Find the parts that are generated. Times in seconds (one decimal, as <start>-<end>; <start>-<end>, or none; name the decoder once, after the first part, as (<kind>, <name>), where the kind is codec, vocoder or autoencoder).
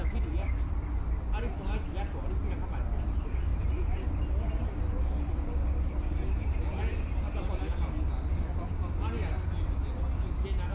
3.5-4.2 (vocoder, BigVGAN v2)